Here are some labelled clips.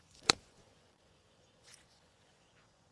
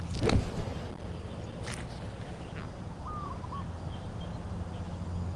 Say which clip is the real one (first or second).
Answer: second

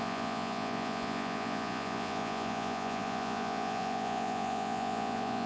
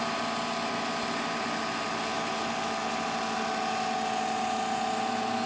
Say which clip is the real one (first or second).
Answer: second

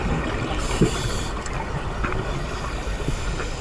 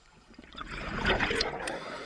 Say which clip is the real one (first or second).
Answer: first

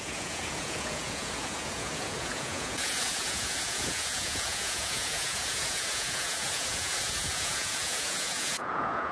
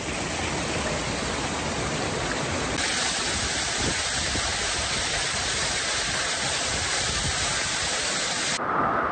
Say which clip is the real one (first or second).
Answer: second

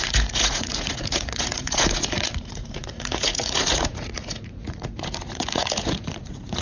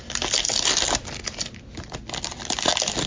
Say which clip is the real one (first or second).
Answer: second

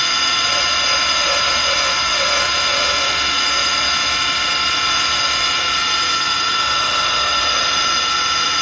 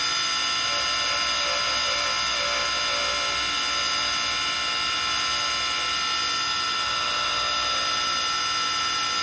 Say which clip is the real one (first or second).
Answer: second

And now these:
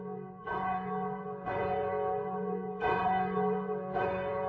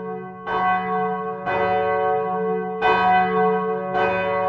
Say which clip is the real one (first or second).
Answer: second